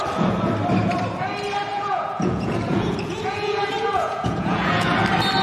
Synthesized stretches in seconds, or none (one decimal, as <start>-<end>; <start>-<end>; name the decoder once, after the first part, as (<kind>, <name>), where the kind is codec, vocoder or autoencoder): 1.7-4.9 (vocoder, Vocos)